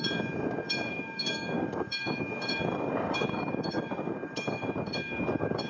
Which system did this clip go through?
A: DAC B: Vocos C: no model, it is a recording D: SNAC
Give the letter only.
A